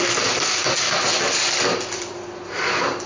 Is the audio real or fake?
real